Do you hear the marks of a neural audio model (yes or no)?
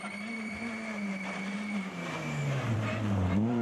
yes